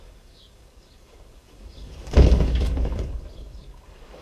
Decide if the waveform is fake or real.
fake